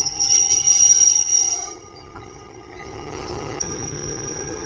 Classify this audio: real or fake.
fake